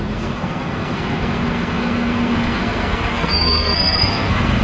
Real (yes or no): no